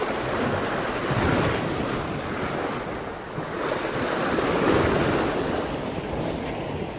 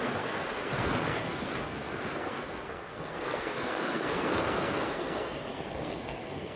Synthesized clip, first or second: second